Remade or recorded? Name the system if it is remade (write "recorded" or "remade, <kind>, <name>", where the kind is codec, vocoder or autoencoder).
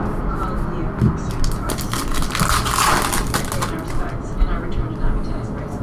recorded